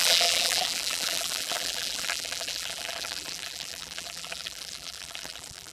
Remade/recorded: remade